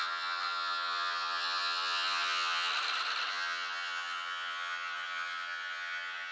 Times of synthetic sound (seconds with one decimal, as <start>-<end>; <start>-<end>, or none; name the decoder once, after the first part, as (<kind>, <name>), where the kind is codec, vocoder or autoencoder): 0.0-2.7 (vocoder, HiFi-GAN); 3.3-6.3